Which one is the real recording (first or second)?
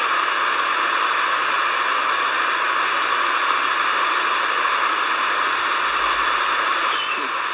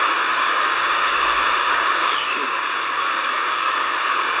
first